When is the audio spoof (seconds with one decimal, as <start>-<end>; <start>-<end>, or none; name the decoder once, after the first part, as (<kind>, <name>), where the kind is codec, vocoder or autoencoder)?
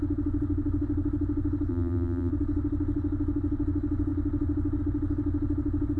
1.7-2.3 (vocoder, BigVGAN v2)